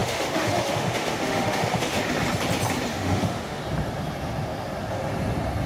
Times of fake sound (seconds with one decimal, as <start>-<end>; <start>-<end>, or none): 0.0-2.0; 2.9-3.6